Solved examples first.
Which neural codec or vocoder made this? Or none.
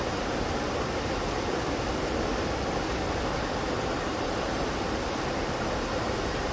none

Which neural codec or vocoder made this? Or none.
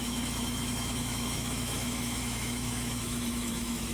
autoencoder, DAC-VAE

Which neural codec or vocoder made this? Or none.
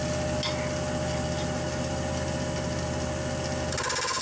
none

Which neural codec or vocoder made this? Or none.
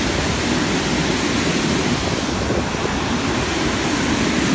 none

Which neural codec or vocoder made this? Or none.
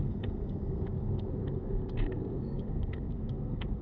codec, SNAC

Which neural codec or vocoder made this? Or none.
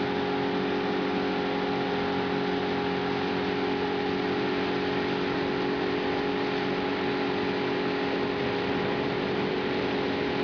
none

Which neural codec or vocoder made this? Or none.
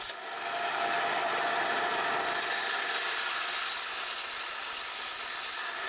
vocoder, BigVGAN v2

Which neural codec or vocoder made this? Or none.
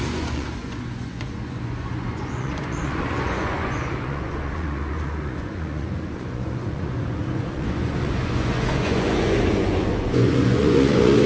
vocoder, Vocos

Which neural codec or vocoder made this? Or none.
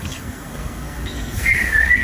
codec, SNAC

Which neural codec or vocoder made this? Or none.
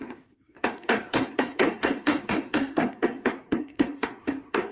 codec, SNAC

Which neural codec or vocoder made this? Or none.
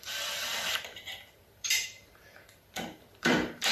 vocoder, BigVGAN v2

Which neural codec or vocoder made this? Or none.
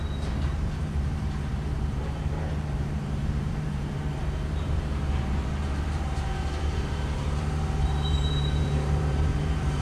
vocoder, BigVGAN v2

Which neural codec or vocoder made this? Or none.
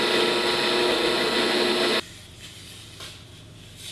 none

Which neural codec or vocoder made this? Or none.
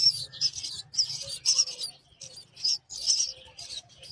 none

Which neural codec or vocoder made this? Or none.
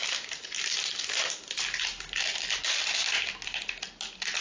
none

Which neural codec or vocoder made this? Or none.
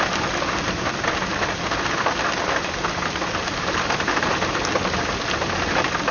none